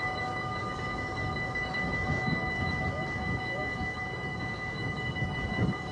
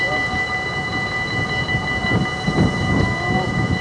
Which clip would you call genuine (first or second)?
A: second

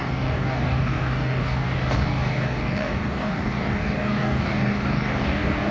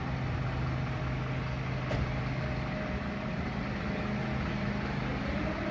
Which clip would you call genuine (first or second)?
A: second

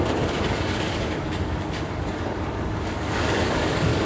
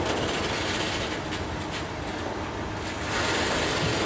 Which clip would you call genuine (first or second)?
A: second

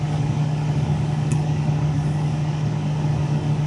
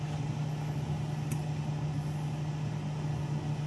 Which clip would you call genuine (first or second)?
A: second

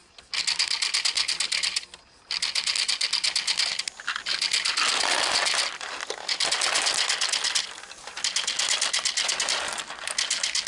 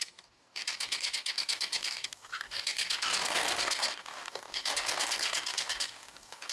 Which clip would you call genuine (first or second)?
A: first